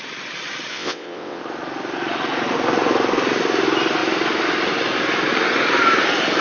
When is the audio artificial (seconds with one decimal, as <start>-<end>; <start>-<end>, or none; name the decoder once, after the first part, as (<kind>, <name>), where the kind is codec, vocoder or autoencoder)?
0.7-1.4 (vocoder, WaveNeXt)